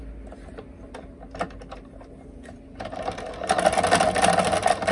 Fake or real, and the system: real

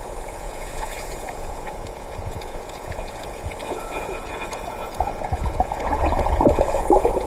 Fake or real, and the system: fake, vocoder, Vocos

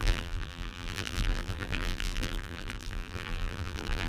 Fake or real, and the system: fake, vocoder, BigVGAN v2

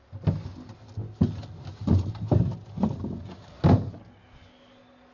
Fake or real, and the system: real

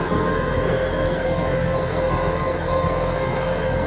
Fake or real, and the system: fake, codec, SNAC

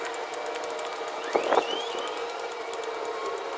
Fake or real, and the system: real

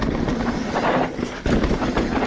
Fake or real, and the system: real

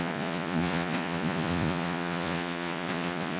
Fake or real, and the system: fake, vocoder, Vocos